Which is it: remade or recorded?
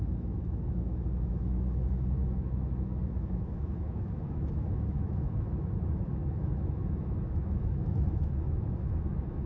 remade